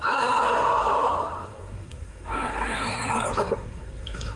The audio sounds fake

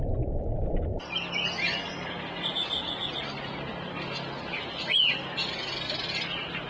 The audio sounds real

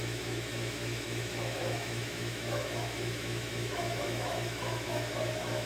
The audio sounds fake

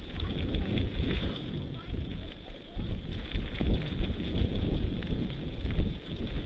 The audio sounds fake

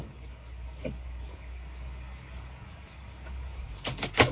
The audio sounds fake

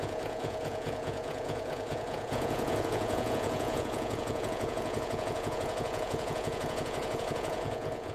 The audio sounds fake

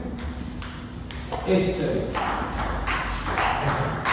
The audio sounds real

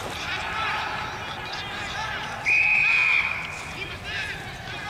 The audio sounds fake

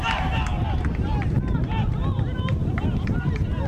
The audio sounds real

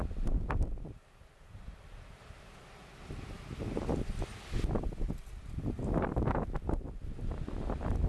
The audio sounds real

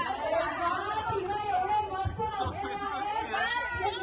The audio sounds real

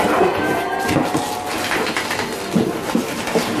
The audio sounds real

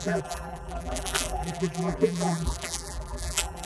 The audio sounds fake